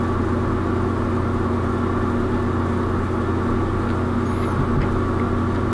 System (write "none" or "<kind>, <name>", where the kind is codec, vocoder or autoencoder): none